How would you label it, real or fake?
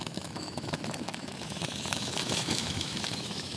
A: fake